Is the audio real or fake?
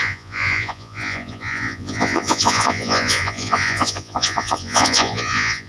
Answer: fake